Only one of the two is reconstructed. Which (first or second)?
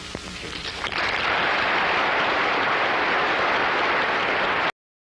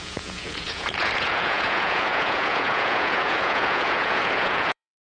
second